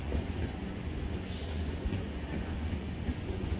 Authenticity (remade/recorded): remade